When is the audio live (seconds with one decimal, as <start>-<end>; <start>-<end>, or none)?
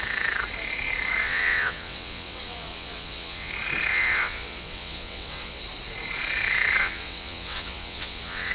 0.0-1.2; 3.5-3.9; 5.6-6.8